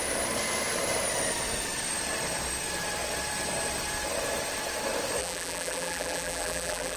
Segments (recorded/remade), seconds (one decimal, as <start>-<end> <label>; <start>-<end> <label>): 0.0-5.2 recorded; 5.2-7.0 remade